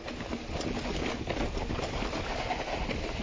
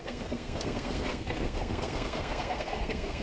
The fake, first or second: second